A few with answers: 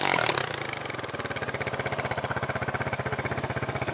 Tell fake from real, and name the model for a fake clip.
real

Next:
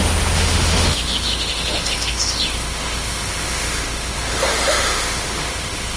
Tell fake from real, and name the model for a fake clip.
fake, autoencoder, DAC-VAE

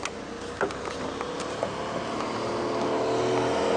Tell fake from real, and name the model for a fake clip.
real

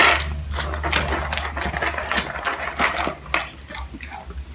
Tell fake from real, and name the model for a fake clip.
real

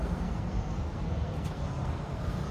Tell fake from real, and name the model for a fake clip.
fake, codec, SNAC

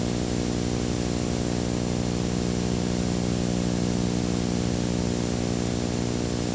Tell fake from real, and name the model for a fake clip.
real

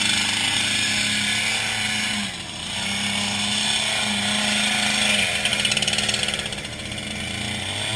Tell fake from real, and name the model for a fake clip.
real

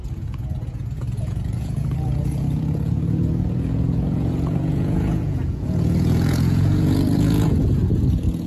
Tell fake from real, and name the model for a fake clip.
fake, vocoder, Vocos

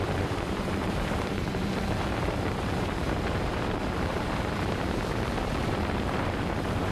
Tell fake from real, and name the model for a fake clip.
fake, vocoder, BigVGAN v2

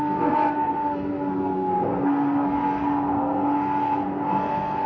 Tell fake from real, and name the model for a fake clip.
fake, codec, SNAC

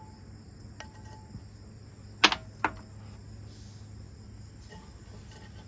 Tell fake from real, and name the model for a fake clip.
real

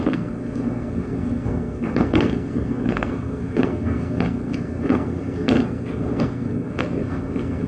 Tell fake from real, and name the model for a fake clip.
fake, codec, SNAC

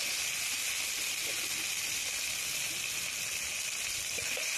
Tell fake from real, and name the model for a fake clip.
real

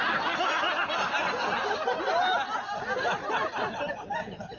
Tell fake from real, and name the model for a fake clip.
real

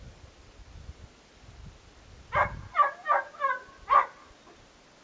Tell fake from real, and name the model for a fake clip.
real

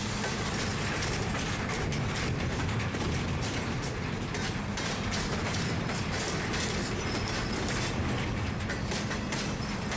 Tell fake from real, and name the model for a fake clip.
real